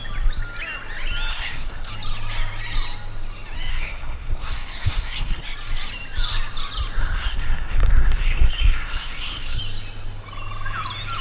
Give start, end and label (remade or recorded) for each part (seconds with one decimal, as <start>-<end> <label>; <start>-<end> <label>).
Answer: 0.0-1.3 recorded; 1.3-1.9 remade; 1.9-3.7 recorded; 3.7-5.4 remade; 5.4-7.0 recorded; 7.0-9.6 remade; 9.6-11.2 recorded